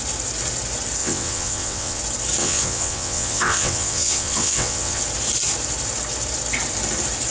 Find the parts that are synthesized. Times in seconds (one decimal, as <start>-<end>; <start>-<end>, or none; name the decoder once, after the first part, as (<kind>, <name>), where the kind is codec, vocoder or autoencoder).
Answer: 1.0-2.0 (vocoder, WaveNeXt); 2.4-5.0